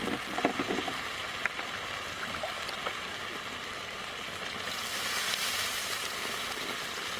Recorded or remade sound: recorded